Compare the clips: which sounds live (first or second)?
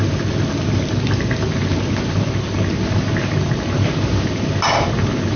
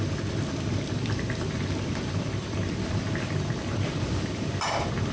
first